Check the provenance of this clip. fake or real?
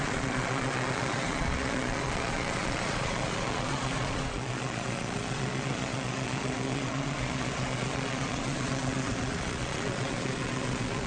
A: fake